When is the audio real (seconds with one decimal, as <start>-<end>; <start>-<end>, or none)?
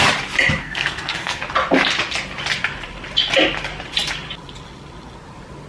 0.0-0.6; 1.4-5.7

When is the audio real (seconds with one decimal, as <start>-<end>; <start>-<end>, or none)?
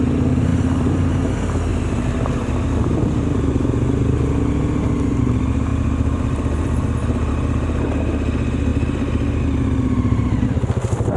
0.0-0.5; 1.1-1.7; 3.5-5.7; 7.3-11.2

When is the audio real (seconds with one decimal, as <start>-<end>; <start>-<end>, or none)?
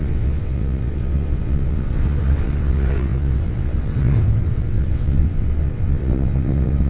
none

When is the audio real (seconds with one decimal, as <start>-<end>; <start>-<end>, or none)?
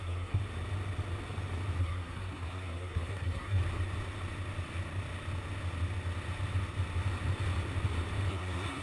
0.4-1.8; 3.6-8.3